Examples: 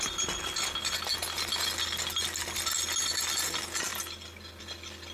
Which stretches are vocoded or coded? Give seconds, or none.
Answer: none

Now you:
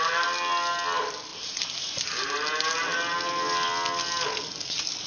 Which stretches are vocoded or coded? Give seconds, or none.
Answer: 1.3-2.3 (vocoder, BigVGAN v2)

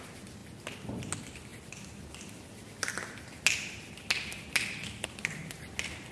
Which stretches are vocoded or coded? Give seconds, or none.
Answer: none

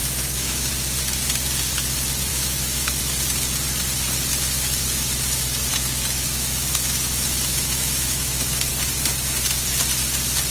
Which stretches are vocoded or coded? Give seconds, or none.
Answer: 0.0-0.7 (autoencoder, DAC-VAE); 2.3-3.0; 5.7-8.7

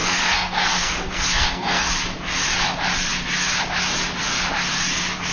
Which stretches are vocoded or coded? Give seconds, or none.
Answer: 0.0-1.9 (codec, SNAC)

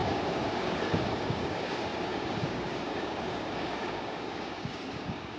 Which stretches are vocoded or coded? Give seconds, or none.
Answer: 0.0-5.4 (codec, DAC)